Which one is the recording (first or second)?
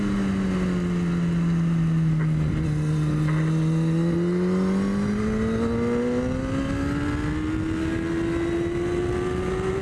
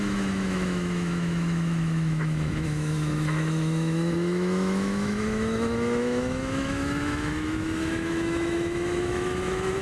first